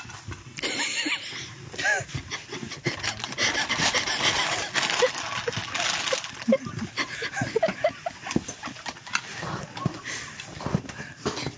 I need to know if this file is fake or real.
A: real